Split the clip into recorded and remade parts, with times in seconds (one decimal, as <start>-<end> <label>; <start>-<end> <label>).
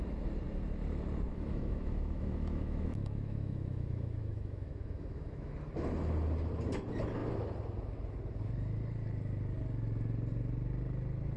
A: 0.0-1.3 recorded; 1.3-5.5 remade; 5.5-11.4 recorded